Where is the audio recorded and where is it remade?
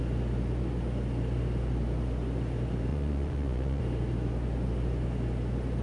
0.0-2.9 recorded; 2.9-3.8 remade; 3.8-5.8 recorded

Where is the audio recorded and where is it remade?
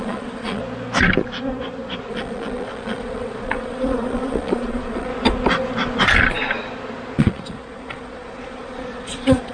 0.0-0.6 remade; 0.6-2.1 recorded; 2.1-5.1 remade; 5.1-7.2 recorded; 7.2-9.5 remade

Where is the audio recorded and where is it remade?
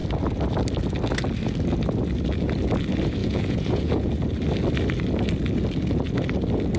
0.0-3.2 recorded; 3.2-4.1 remade; 4.1-6.8 recorded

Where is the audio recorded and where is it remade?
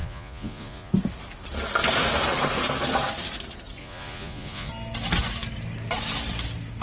0.0-0.9 remade; 0.9-3.8 recorded; 3.8-4.7 remade; 4.7-6.8 recorded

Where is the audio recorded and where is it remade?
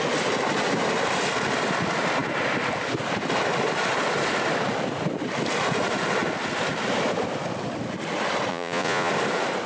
0.0-8.5 recorded; 8.5-9.1 remade; 9.1-9.7 recorded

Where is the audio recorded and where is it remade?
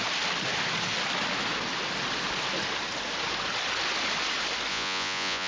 0.0-4.7 recorded; 4.7-5.5 remade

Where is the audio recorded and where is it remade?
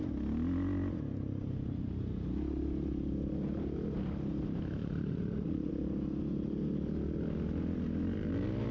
0.0-4.8 recorded; 4.8-5.7 remade; 5.7-8.7 recorded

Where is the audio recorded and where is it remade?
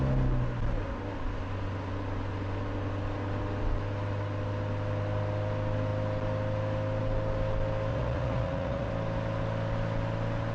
0.0-7.9 recorded; 7.9-8.9 remade; 8.9-10.5 recorded